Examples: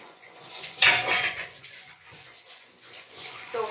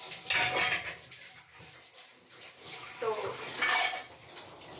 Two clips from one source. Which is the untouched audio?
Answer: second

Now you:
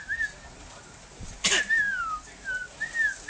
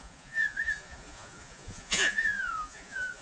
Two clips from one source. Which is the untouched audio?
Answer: first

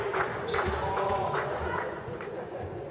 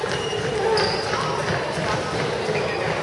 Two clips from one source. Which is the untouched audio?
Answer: second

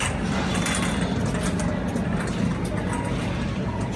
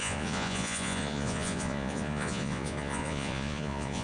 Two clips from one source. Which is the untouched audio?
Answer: first